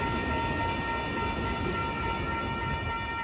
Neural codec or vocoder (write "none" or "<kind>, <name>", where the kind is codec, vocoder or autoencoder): none